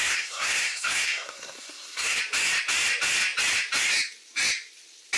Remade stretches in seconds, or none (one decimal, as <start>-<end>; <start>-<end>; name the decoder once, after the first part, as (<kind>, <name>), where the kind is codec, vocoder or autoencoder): 0.0-2.2 (codec, SNAC)